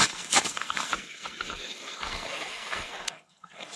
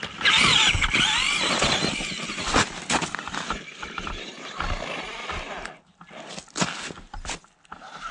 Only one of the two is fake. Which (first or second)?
first